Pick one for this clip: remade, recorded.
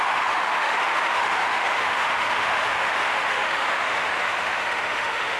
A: remade